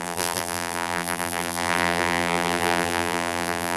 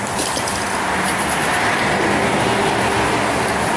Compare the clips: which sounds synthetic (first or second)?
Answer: first